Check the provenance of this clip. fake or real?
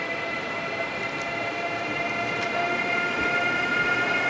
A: real